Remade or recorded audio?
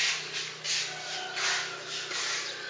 recorded